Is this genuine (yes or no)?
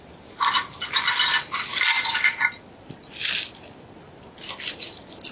yes